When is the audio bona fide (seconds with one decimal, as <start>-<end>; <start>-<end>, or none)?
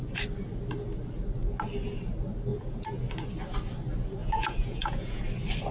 0.0-2.5; 3.0-4.2; 5.2-5.7